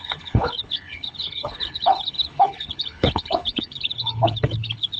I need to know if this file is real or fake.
fake